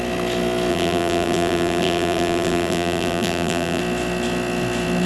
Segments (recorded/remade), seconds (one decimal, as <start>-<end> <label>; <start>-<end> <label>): 0.0-0.7 recorded; 0.7-3.8 remade; 3.8-5.1 recorded